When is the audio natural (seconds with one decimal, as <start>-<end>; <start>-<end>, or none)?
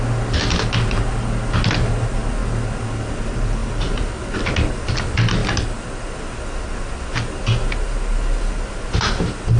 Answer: 0.0-3.6; 4.5-9.6